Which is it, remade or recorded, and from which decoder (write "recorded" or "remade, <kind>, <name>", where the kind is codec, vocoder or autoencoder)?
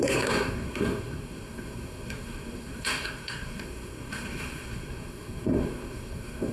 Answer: remade, codec, SNAC